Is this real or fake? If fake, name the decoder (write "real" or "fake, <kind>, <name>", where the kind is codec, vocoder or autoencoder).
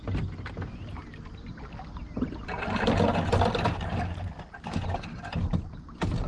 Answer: real